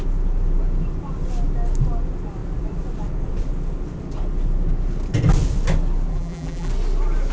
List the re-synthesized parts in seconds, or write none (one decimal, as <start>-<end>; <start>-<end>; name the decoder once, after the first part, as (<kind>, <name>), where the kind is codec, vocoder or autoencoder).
6.1-6.7 (vocoder, BigVGAN v2)